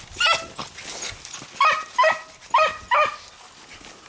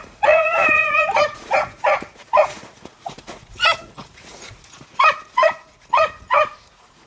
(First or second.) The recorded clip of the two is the first